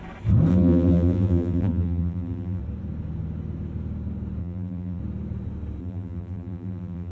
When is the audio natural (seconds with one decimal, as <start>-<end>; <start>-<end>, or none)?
0.0-0.5; 2.6-4.4; 5.0-5.8